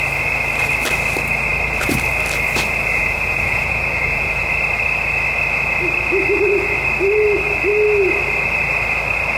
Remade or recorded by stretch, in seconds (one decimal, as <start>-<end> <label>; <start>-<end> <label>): 0.0-3.0 recorded; 3.0-4.4 remade; 4.4-9.4 recorded